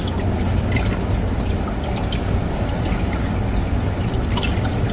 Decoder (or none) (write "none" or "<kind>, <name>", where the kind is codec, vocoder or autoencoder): none